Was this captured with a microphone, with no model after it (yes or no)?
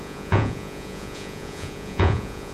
no